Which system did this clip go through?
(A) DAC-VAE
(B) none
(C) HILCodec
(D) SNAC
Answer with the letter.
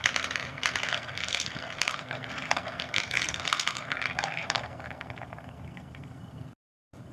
D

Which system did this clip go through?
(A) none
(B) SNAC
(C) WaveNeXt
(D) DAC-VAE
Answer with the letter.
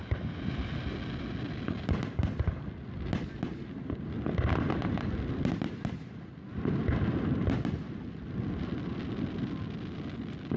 A